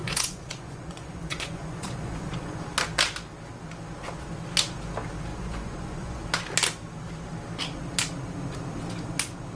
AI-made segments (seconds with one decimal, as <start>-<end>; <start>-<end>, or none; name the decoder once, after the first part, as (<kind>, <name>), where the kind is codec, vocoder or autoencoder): 0.0-2.6 (vocoder, Vocos); 5.3-6.2